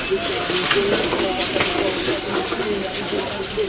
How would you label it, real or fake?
real